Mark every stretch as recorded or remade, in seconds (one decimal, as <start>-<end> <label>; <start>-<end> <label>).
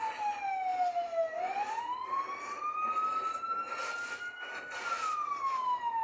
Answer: 0.0-6.0 recorded